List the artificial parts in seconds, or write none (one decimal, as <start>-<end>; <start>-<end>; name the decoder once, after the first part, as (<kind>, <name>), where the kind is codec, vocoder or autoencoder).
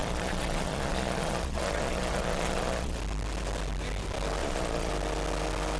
0.0-3.0 (vocoder, Vocos); 4.4-4.9